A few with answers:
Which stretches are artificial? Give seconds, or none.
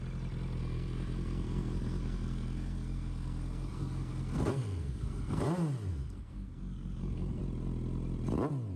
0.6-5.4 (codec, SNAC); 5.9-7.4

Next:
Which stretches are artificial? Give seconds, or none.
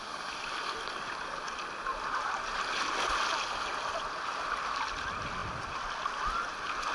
none